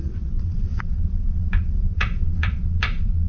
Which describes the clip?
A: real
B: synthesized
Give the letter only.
B